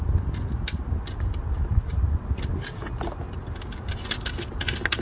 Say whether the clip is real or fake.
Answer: real